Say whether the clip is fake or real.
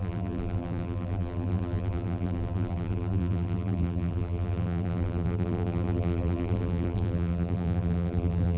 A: fake